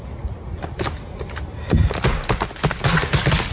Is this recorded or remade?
recorded